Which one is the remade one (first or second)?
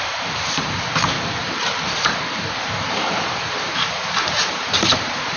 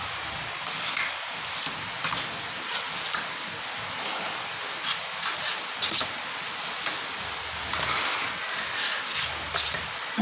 first